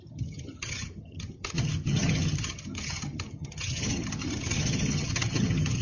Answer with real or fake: fake